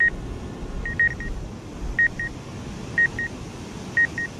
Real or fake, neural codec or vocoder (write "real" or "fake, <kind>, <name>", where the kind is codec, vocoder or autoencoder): real